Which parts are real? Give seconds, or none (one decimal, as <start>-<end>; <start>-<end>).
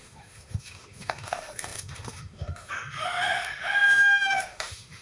none